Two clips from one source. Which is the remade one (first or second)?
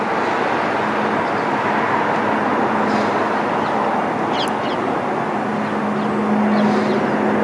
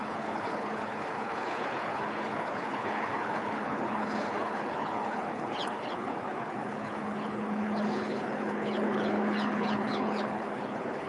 second